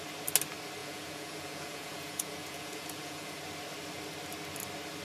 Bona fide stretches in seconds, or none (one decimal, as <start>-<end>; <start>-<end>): 0.0-0.8; 3.4-5.0